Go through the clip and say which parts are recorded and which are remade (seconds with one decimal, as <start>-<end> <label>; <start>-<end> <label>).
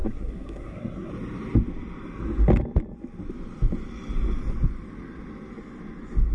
0.0-1.1 remade; 1.1-6.3 recorded